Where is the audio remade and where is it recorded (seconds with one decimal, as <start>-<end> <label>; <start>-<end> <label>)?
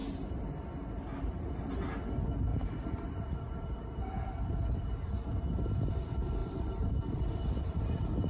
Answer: 0.0-2.5 recorded; 2.5-4.0 remade; 4.0-4.8 recorded; 4.8-5.9 remade; 5.9-6.4 recorded; 6.4-6.9 remade; 6.9-8.3 recorded